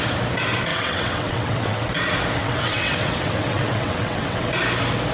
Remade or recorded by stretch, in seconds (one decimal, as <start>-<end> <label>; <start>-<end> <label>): 0.0-0.7 recorded; 0.7-1.9 remade; 1.9-2.4 recorded; 2.4-4.5 remade; 4.5-5.1 recorded